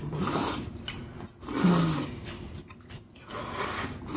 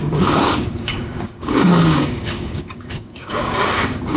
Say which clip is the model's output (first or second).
second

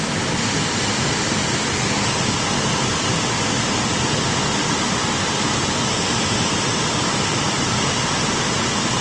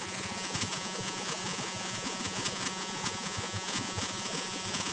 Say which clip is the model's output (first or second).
second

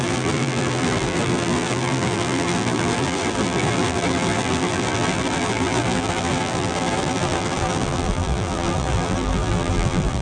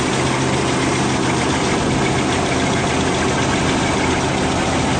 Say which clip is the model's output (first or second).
first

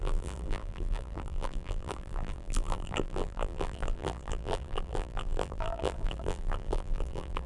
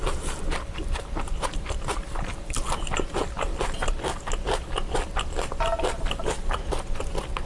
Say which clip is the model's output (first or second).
first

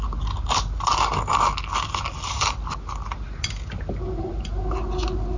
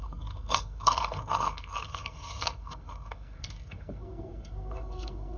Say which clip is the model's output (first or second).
second